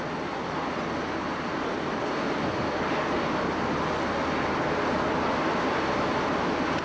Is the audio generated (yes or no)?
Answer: no